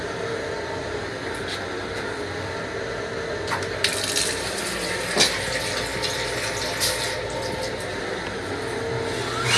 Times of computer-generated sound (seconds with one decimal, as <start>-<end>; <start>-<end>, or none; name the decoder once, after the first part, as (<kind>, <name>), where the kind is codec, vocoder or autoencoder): none